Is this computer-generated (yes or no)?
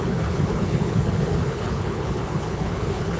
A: yes